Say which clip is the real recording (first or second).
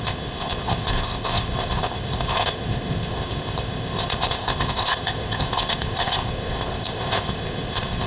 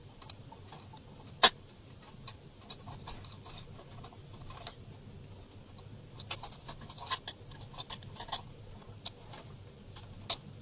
second